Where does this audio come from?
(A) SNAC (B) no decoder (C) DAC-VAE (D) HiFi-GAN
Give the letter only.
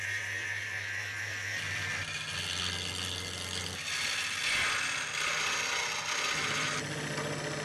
B